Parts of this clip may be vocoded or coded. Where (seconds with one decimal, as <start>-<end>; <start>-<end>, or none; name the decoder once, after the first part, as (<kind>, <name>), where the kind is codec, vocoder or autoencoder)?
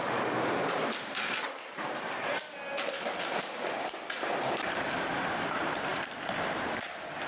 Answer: 0.0-7.3 (vocoder, BigVGAN v2)